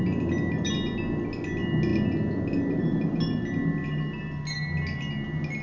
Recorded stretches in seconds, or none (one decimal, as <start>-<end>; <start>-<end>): 0.0-5.6